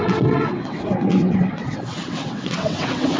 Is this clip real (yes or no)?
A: no